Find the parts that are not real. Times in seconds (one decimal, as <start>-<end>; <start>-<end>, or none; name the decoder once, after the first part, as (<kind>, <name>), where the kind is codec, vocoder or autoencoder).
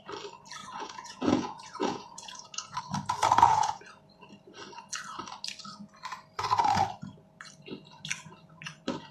0.6-2.8 (vocoder, Vocos); 3.2-3.8